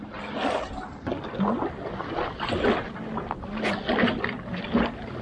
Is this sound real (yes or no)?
yes